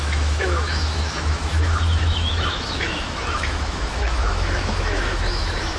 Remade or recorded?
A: remade